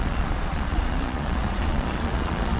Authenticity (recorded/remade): remade